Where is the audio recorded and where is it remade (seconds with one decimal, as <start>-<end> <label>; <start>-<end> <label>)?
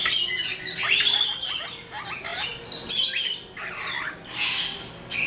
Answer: 0.0-5.3 recorded